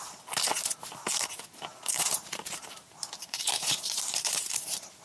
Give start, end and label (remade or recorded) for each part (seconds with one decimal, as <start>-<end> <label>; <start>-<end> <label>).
0.0-1.7 recorded; 1.7-5.0 remade